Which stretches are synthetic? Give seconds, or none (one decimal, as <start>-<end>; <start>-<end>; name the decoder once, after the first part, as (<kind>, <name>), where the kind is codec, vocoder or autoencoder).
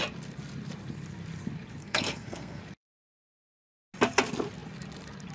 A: 1.8-2.6 (codec, SNAC)